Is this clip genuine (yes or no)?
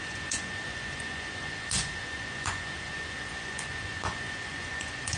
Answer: no